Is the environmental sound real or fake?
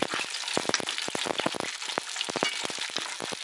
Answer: real